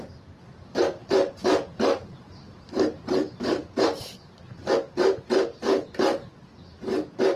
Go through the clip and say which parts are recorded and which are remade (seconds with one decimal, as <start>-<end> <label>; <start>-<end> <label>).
0.0-1.0 recorded; 1.0-4.0 remade; 4.0-7.4 recorded

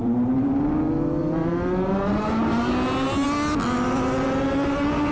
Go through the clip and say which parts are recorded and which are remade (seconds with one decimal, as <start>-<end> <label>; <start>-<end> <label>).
0.0-0.7 remade; 0.7-1.2 recorded; 1.2-2.7 remade; 2.7-5.1 recorded

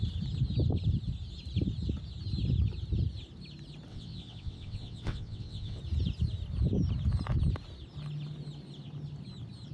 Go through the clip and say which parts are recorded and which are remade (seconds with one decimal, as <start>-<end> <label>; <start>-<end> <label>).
0.0-3.9 recorded; 3.9-5.8 remade; 5.8-9.7 recorded

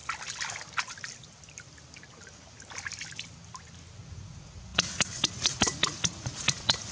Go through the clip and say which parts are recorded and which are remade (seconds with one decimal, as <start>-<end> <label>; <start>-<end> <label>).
0.0-4.1 recorded; 4.1-6.9 remade

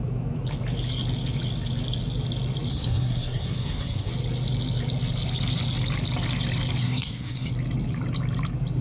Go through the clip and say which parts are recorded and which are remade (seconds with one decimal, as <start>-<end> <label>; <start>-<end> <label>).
0.0-2.7 recorded; 2.7-4.1 remade; 4.1-6.8 recorded; 6.8-7.5 remade; 7.5-8.8 recorded